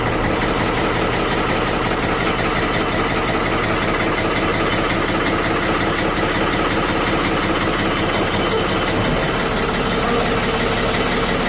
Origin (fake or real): real